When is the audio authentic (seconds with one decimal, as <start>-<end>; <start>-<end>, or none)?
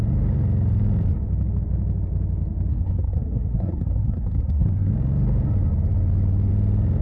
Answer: 0.0-2.7; 4.9-7.0